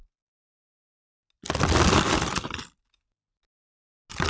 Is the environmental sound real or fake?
real